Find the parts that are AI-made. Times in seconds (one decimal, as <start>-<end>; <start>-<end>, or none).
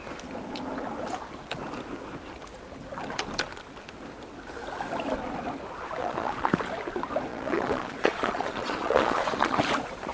6.0-6.5; 7.3-9.6